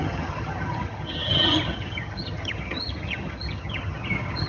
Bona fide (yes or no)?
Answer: no